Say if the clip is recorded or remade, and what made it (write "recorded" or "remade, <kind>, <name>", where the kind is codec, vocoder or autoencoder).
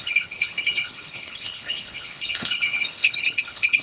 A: remade, codec, HILCodec